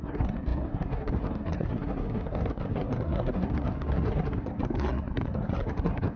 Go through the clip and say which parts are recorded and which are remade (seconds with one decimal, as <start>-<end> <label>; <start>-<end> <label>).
0.0-6.2 remade